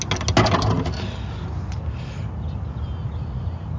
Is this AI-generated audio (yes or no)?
no